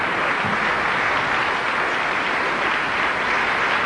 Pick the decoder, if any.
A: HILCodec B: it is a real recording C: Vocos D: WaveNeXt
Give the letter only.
B